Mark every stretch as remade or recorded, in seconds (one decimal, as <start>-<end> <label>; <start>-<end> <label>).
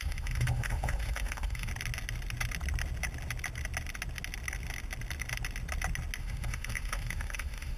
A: 0.0-1.7 remade; 1.7-6.2 recorded; 6.2-7.8 remade